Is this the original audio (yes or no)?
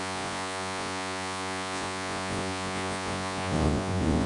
no